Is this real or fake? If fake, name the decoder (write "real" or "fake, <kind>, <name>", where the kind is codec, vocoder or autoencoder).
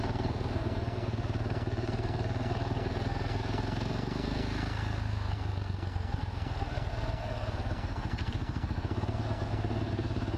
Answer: fake, codec, SNAC